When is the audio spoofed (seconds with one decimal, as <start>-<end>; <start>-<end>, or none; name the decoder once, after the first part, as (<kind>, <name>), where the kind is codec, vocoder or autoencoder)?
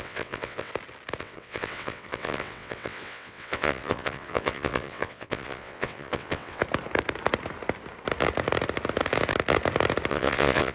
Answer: 0.0-0.7 (vocoder, WaveNeXt); 1.2-6.6; 10.1-10.7